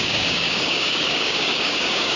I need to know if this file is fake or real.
fake